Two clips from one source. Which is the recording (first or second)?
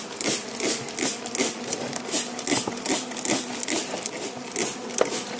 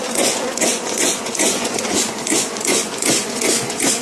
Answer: first